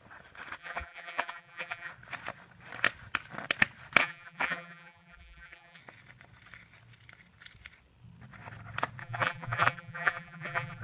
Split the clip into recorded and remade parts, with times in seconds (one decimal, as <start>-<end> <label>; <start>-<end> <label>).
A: 0.0-0.6 recorded; 0.6-1.9 remade; 1.9-4.0 recorded; 4.0-5.8 remade; 5.8-9.0 recorded; 9.0-10.8 remade